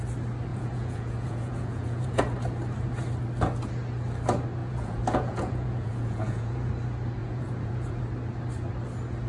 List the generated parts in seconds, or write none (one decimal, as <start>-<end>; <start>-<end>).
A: 0.5-2.2; 4.6-6.7; 7.2-8.0